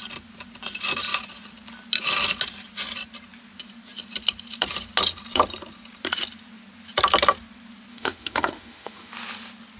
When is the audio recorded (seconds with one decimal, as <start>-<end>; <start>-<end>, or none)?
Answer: 0.0-7.9; 9.1-9.8